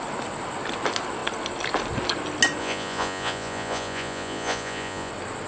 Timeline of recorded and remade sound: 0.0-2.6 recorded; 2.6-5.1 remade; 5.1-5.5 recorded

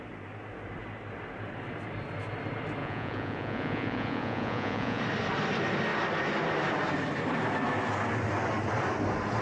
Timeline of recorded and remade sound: 0.0-2.8 recorded; 2.8-5.0 remade; 5.0-9.4 recorded